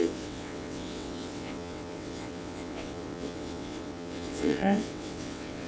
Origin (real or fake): fake